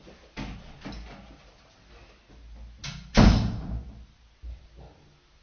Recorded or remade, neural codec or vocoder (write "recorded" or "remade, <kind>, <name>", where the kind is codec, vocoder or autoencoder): recorded